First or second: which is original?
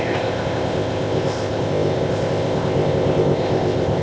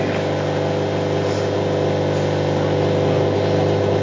second